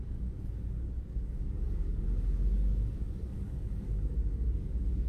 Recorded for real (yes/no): no